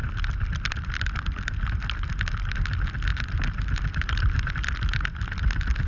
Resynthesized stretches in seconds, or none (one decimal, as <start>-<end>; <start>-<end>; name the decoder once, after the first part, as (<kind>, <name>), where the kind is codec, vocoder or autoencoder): 3.1-4.5 (vocoder, BigVGAN v2)